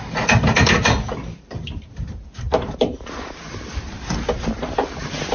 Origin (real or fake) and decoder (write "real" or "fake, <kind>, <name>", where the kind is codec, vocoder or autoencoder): fake, vocoder, BigVGAN v2